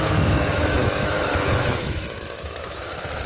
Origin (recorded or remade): remade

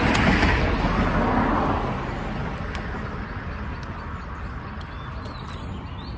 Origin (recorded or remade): recorded